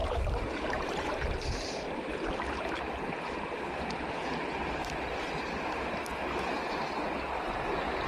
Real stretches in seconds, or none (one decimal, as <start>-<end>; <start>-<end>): 2.3-4.8; 6.0-8.1

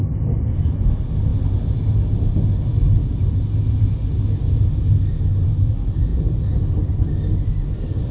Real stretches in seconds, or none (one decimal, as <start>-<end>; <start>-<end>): 0.0-8.1

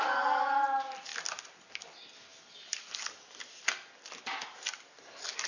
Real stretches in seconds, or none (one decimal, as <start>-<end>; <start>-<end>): 0.0-5.5

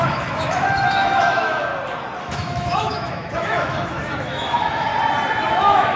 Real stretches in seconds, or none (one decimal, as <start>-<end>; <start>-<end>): 1.7-2.2; 4.9-5.5